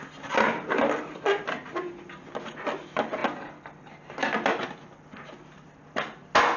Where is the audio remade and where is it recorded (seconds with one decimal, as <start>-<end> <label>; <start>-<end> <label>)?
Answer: 0.0-6.6 recorded